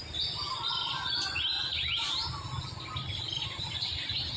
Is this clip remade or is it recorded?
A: recorded